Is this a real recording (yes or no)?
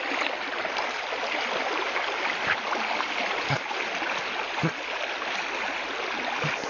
yes